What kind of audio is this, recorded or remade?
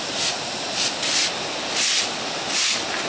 recorded